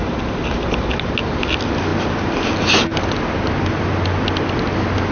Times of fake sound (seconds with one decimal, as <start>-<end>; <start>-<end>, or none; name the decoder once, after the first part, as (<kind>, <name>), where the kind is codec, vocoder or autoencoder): none